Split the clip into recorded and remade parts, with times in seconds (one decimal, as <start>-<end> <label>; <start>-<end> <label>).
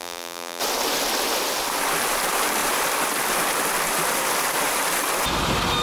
0.0-0.6 remade; 0.6-5.8 recorded